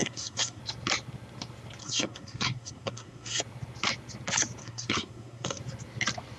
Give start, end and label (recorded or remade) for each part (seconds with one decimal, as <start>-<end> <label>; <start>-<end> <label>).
0.0-0.6 remade; 0.6-1.8 recorded; 1.8-3.4 remade; 3.4-4.6 recorded; 4.6-5.6 remade; 5.6-6.4 recorded

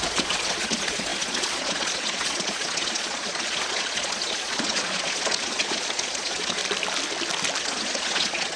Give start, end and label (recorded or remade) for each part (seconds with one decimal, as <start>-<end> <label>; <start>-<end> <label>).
0.0-6.6 remade; 6.6-7.6 recorded; 7.6-8.6 remade

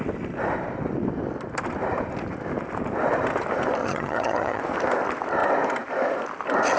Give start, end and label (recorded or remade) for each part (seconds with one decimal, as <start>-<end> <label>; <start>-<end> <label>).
0.0-3.8 recorded; 3.8-4.6 remade; 4.6-6.8 recorded

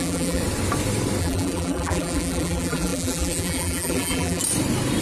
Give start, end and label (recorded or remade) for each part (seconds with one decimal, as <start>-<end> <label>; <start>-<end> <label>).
0.0-0.4 remade; 0.4-1.2 recorded; 1.2-4.4 remade; 4.4-5.0 recorded

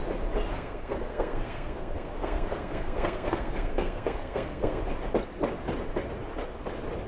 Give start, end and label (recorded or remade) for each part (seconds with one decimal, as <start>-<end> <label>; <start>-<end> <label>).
0.0-0.5 recorded; 0.5-4.8 remade; 4.8-7.1 recorded

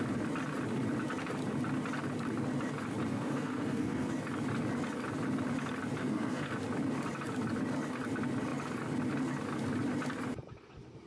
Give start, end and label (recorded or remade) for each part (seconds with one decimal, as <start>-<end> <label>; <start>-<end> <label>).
0.0-3.1 recorded; 3.1-4.1 remade; 4.1-6.0 recorded; 6.0-6.5 remade; 6.5-11.1 recorded